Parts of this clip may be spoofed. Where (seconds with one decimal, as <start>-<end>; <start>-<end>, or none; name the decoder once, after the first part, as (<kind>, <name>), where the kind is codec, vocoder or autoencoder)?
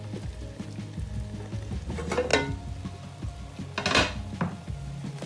none